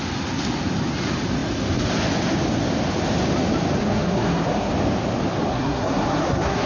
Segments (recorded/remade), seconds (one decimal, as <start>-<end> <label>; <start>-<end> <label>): 0.0-3.8 recorded; 3.8-4.7 remade; 4.7-5.5 recorded; 5.5-6.7 remade